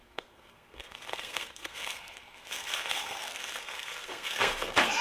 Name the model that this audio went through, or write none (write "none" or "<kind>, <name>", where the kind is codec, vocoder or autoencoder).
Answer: codec, SNAC